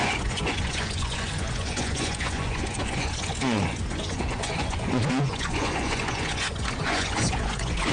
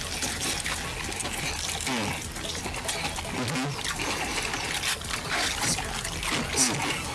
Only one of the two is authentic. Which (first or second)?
second